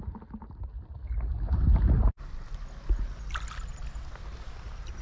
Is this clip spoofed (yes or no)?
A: no